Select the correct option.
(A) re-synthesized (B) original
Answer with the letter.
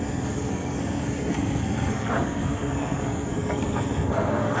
A